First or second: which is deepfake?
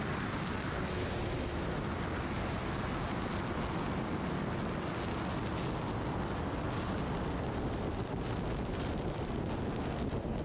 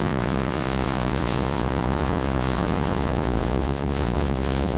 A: second